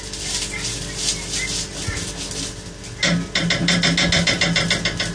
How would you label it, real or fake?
real